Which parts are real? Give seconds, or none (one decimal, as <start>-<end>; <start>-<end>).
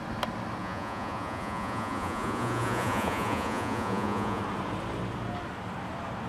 0.0-0.6; 4.4-6.3